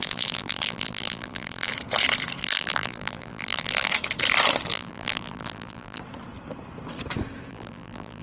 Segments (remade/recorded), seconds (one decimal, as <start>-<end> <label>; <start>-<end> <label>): 0.0-1.7 remade; 1.7-2.4 recorded; 2.4-3.9 remade; 3.9-4.7 recorded; 4.7-6.0 remade; 6.0-7.5 recorded; 7.5-8.2 remade

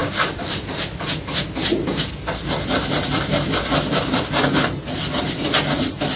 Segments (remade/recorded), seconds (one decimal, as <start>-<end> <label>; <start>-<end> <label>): 0.0-6.2 recorded

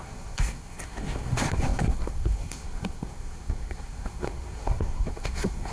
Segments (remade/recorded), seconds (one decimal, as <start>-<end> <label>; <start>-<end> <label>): 0.0-5.7 remade